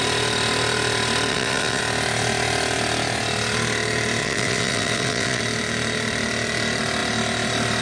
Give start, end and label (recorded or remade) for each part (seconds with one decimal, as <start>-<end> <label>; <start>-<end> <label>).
0.0-1.3 recorded; 1.3-1.8 remade; 1.8-4.2 recorded; 4.2-5.4 remade; 5.4-7.8 recorded